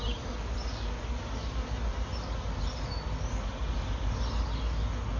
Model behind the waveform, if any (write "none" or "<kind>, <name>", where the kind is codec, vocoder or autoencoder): none